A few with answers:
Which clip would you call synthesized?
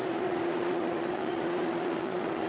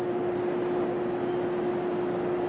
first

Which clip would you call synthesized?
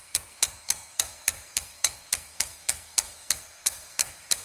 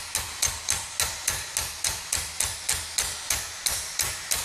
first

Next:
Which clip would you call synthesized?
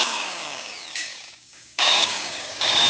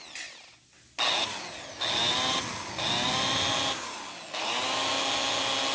first